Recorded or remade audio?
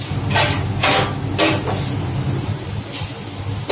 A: recorded